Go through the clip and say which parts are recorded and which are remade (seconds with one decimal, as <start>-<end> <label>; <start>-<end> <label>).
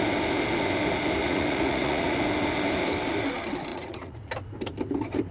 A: 0.0-1.2 recorded; 1.2-2.2 remade; 2.2-3.7 recorded; 3.7-4.3 remade; 4.3-5.3 recorded